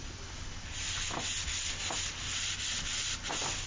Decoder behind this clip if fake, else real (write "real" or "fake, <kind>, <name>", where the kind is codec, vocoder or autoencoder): real